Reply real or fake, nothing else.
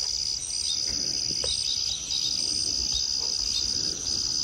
real